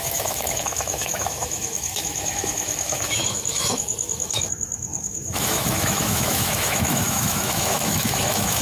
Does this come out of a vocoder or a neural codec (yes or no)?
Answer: yes